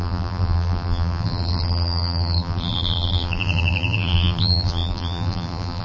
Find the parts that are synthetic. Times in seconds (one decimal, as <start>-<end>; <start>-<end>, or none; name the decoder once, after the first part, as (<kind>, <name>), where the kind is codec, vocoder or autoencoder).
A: 0.0-5.8 (vocoder, BigVGAN v2)